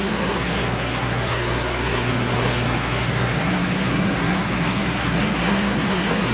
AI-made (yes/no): yes